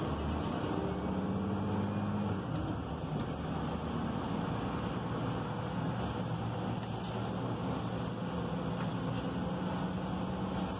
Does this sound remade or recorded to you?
recorded